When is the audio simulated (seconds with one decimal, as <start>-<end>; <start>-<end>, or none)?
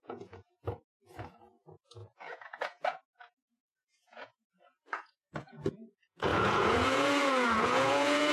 0.0-8.3